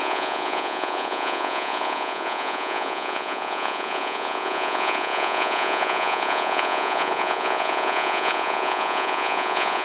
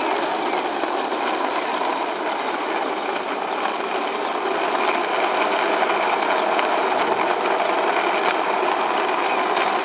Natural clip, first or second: second